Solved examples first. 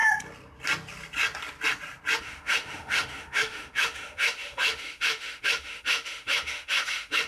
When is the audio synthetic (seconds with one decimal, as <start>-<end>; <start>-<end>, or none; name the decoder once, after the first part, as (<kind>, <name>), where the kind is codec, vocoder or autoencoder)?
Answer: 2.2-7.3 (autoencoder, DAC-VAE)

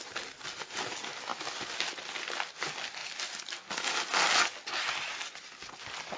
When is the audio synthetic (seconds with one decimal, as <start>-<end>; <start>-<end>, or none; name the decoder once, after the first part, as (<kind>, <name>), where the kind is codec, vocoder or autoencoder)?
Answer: none

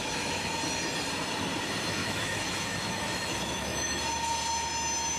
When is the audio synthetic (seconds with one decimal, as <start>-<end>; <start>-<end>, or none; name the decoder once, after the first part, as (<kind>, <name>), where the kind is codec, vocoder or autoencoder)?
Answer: 0.0-0.5 (autoencoder, DAC-VAE); 2.0-4.0

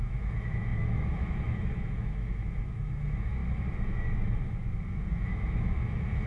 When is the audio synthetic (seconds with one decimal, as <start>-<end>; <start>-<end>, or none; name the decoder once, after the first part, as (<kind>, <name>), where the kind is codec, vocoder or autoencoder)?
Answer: 0.0-3.4 (autoencoder, DAC-VAE); 5.1-6.3

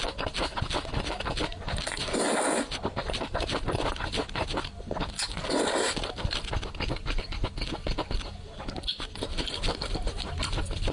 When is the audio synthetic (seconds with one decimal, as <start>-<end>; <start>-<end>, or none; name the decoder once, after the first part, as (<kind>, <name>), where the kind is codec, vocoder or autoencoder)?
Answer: none